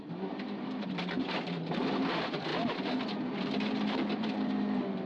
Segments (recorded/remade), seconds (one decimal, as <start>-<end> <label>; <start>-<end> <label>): 0.0-2.5 remade; 2.5-3.4 recorded; 3.4-5.1 remade